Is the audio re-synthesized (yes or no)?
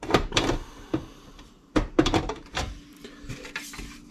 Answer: yes